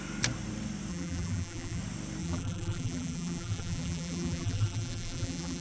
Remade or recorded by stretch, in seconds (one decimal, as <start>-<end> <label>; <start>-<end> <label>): 0.0-0.9 recorded; 0.9-1.8 remade; 1.8-2.2 recorded; 2.2-5.6 remade